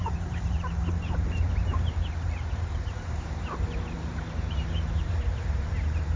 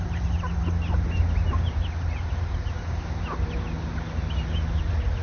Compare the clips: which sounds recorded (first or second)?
second